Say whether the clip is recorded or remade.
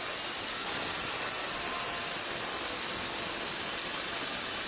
recorded